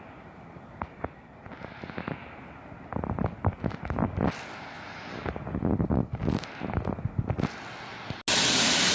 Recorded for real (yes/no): yes